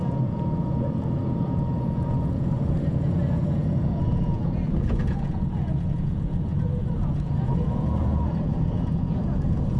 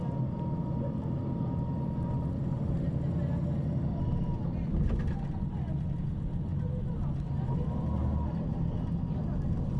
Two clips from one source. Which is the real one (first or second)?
second